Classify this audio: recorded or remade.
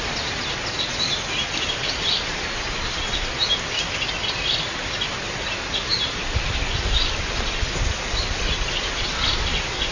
recorded